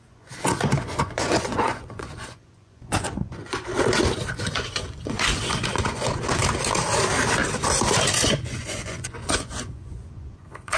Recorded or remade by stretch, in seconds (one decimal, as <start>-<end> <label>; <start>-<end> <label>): 0.0-3.7 remade; 3.7-4.3 recorded; 4.3-6.4 remade; 6.4-8.1 recorded; 8.1-10.8 remade